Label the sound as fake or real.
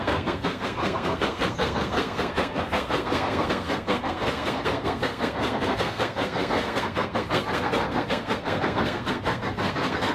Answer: fake